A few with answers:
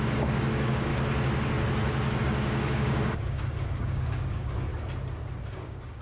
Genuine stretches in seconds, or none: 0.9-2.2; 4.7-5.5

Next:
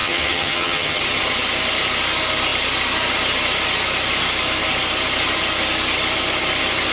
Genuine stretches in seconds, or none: 1.0-6.9

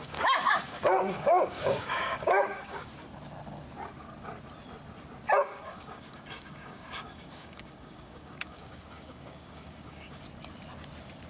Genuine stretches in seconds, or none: 2.9-5.4; 10.2-11.3

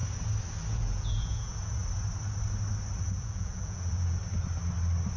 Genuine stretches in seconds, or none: 0.0-0.7; 1.8-3.0; 4.2-5.2